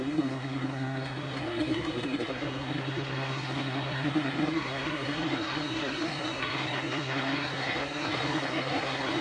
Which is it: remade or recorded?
remade